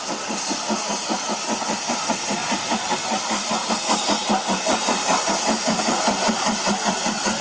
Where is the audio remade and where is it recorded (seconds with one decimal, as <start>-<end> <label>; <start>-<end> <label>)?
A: 0.0-7.4 recorded